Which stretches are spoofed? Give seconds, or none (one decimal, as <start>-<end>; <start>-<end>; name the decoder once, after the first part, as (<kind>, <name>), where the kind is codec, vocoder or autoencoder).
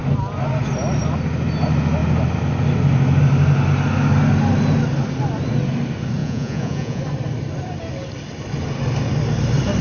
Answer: 6.2-7.0 (vocoder, Vocos)